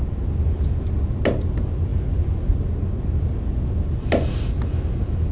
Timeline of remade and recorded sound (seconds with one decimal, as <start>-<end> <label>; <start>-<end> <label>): 0.0-5.3 recorded